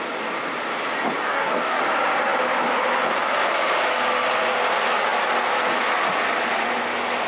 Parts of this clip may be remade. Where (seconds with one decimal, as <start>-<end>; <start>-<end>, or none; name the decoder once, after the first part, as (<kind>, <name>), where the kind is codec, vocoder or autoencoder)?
1.2-1.8 (codec, DAC)